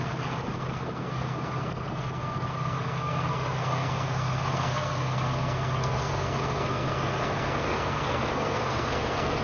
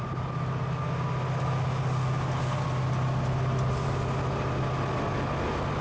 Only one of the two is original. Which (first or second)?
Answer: second